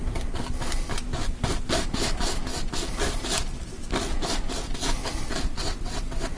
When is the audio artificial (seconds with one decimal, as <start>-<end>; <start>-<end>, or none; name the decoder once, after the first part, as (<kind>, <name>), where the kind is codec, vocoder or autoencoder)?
5.6-6.4 (vocoder, WaveNeXt)